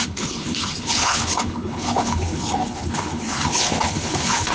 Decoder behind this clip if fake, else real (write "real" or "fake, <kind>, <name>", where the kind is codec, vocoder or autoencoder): fake, codec, HILCodec